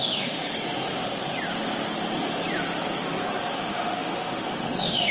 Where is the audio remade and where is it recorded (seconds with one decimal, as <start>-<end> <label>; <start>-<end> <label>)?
0.0-0.4 remade; 0.4-3.5 recorded; 3.5-5.1 remade